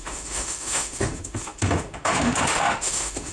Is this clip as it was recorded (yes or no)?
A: no